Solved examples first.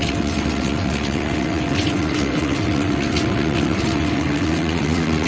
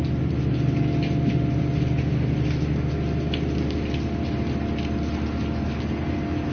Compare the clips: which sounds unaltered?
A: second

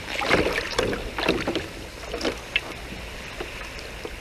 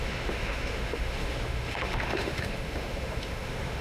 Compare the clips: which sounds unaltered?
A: first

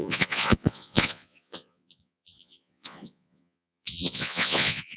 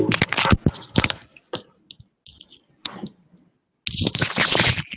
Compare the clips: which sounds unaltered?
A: second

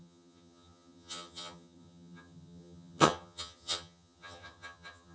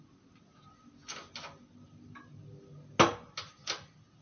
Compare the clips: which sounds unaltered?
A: second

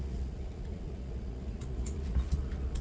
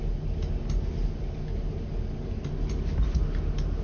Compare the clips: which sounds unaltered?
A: second